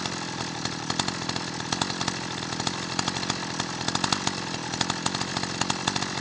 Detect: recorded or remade recorded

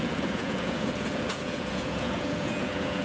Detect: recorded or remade remade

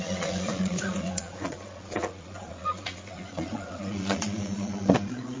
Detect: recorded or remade remade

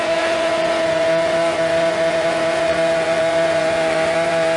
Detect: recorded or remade remade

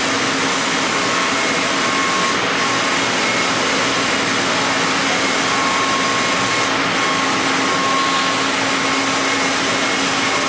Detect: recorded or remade recorded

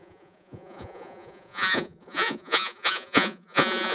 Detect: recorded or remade remade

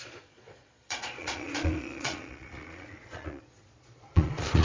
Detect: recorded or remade remade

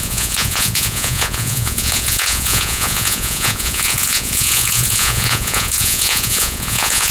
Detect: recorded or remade remade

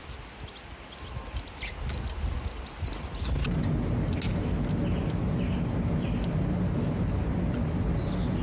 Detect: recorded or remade recorded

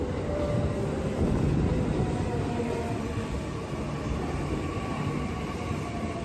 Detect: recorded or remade recorded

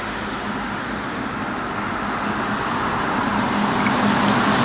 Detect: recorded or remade recorded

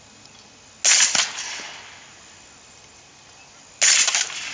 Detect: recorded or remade recorded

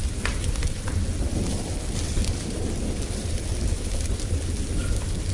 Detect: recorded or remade recorded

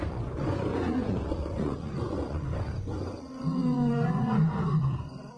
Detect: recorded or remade remade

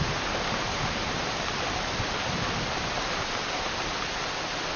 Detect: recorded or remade recorded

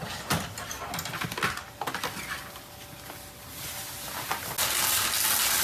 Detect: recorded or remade recorded